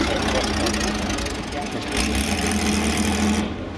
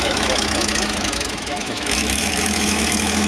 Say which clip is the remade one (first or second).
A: second